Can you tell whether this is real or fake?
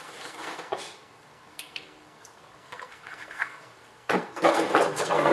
fake